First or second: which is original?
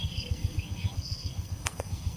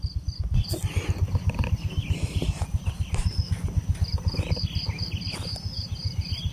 second